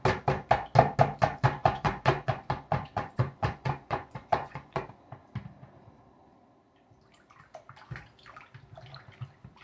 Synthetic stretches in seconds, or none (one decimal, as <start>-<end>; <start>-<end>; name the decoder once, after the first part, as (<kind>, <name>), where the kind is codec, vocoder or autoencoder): 1.6-4.8 (vocoder, Vocos)